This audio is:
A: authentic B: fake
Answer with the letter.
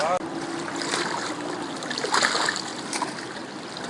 A